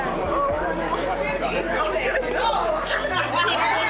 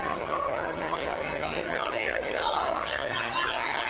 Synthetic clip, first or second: second